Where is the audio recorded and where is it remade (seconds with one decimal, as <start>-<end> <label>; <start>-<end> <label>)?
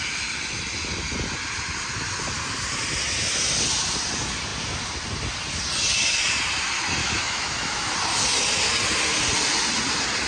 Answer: 0.0-7.0 recorded; 7.0-7.9 remade; 7.9-10.3 recorded